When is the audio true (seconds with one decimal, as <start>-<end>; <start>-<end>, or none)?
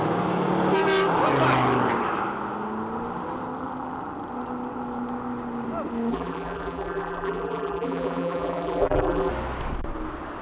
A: 0.0-6.1; 9.3-10.4